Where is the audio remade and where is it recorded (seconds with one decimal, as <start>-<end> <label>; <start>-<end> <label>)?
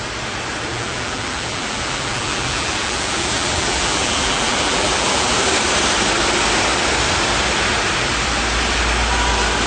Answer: 0.0-0.7 recorded; 0.7-5.4 remade; 5.4-9.7 recorded